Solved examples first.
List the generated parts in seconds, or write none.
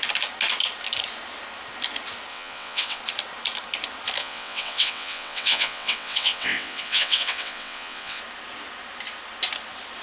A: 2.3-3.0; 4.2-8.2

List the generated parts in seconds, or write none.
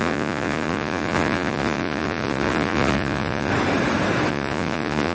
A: 0.0-3.5; 4.3-5.1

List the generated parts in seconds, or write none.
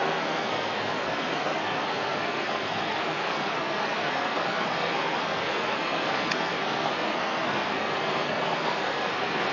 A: 0.0-9.5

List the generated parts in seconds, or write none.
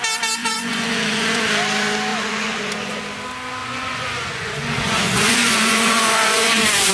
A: 0.4-1.4; 2.1-3.0; 3.6-6.9